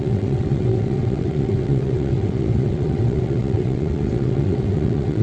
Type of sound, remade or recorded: remade